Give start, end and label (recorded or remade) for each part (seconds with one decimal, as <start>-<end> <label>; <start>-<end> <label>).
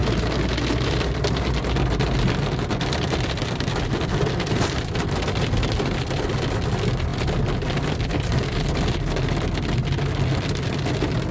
0.0-11.3 recorded